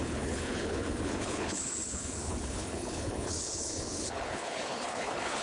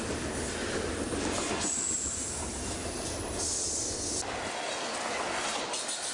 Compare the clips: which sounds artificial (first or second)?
first